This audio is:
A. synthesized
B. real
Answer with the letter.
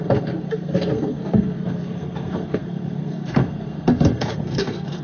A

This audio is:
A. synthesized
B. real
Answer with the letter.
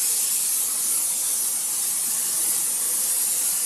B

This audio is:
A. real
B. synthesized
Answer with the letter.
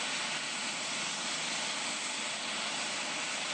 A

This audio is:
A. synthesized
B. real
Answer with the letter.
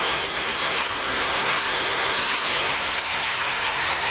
A